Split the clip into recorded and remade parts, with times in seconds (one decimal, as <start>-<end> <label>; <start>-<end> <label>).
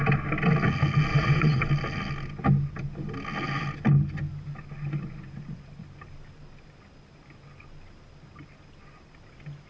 0.0-1.1 recorded; 1.1-1.7 remade; 1.7-9.7 recorded